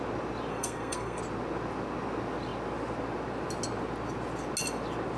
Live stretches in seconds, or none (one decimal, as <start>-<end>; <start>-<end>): 0.0-0.5; 1.2-5.2